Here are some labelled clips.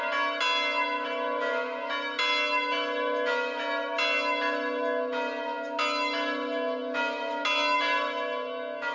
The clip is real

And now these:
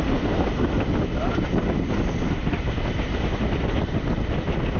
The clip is real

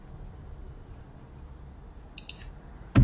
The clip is real